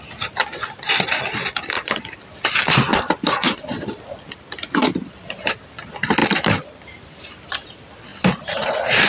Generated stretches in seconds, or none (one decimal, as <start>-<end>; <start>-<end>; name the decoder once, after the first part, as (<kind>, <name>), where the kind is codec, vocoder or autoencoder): 0.0-8.1 (vocoder, BigVGAN v2)